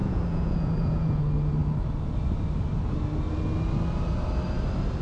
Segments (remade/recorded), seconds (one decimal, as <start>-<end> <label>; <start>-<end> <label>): 0.0-1.2 remade; 1.2-5.0 recorded